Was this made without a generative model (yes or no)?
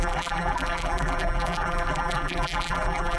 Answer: no